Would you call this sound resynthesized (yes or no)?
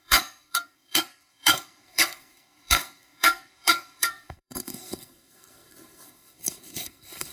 yes